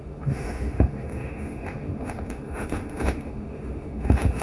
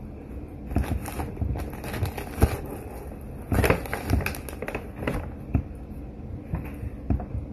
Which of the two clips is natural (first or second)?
second